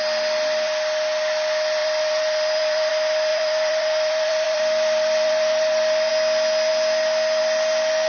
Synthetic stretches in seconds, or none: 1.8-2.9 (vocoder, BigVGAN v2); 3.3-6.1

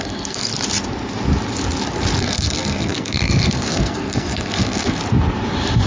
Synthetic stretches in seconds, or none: 0.0-0.5 (codec, SNAC); 2.2-5.0